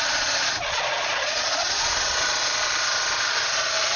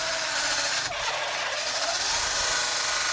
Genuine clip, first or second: second